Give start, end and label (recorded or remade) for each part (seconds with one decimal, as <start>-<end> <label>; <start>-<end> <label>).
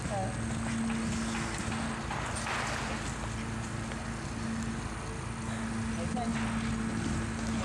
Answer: 0.0-7.6 recorded